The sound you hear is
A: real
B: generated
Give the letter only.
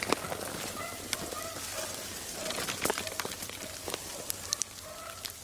A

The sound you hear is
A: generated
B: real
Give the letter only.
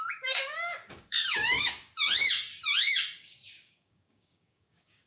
A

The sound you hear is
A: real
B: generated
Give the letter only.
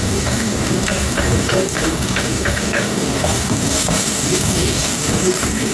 B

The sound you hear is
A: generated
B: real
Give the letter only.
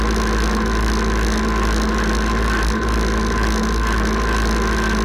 B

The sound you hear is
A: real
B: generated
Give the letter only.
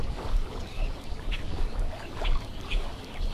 B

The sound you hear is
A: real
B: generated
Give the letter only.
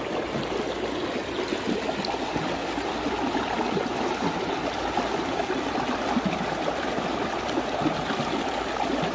A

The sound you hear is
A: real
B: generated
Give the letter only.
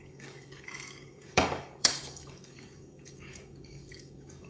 B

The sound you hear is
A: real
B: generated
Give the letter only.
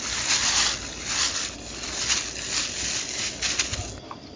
A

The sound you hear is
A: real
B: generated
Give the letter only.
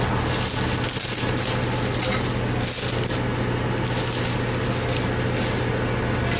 A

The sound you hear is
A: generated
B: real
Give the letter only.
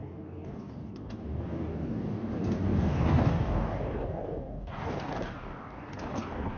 A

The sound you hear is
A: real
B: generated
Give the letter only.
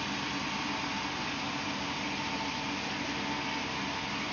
A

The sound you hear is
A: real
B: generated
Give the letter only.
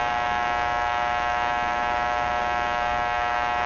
B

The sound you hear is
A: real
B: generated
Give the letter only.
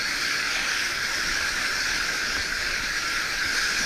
B